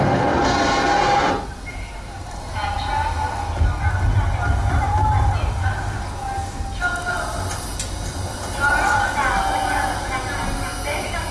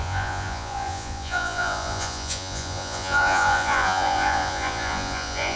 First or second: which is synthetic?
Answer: second